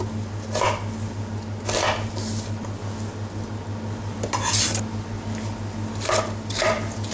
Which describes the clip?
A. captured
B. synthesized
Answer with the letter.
A